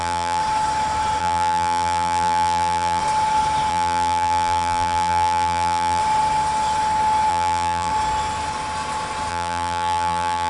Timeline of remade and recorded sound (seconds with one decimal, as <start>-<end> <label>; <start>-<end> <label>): 0.0-0.4 remade; 0.4-1.2 recorded; 1.2-3.0 remade; 3.0-3.7 recorded; 3.7-6.0 remade; 6.0-7.3 recorded; 7.3-7.9 remade; 7.9-9.3 recorded; 9.3-10.5 remade